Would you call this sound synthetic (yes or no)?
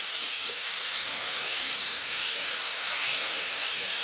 yes